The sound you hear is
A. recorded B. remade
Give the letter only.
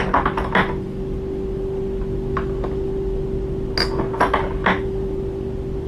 A